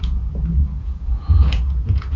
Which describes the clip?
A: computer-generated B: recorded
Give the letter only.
A